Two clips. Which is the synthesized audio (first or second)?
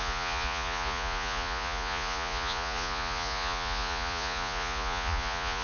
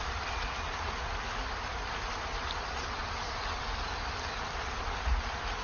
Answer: first